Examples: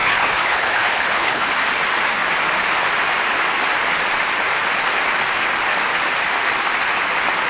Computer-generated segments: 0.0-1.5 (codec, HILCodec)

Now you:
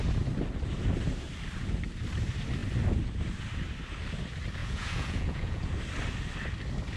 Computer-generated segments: 4.6-5.6 (vocoder, Vocos)